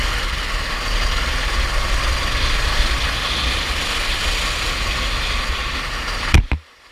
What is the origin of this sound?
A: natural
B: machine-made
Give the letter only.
A